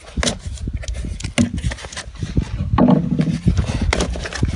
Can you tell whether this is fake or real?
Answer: real